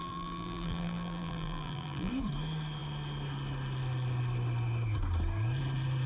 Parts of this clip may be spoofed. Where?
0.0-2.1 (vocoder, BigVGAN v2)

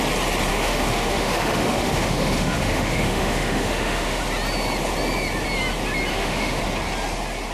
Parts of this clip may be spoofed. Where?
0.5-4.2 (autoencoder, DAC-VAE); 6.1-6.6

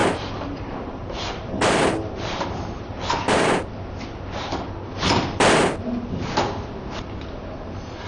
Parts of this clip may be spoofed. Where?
0.0-3.6 (vocoder, BigVGAN v2)

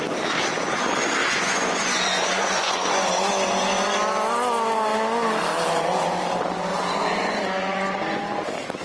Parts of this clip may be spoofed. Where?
1.2-3.3 (vocoder, Vocos); 6.7-8.2

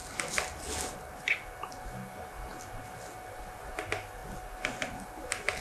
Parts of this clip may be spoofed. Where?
none

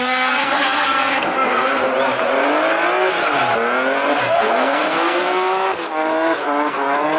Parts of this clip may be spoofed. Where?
0.0-1.9 (codec, SNAC); 4.2-7.2

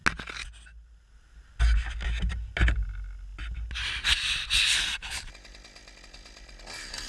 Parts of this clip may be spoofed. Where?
3.3-5.3 (vocoder, BigVGAN v2)